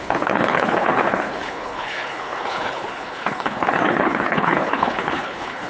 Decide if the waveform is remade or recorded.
remade